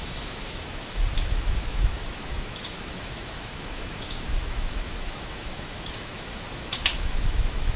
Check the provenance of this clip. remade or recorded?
remade